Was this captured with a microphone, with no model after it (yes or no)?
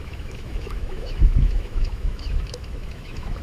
no